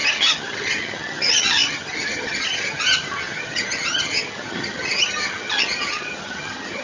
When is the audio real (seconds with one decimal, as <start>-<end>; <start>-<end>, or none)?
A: none